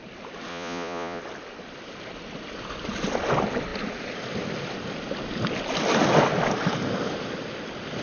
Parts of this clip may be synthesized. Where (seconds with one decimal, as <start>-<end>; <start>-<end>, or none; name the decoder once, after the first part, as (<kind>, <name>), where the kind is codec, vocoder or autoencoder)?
0.5-1.2 (vocoder, Vocos)